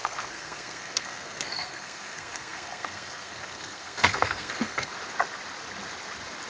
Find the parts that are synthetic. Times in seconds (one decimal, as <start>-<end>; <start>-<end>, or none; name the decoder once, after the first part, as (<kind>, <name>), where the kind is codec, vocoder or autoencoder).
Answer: 0.0-4.9 (codec, SNAC)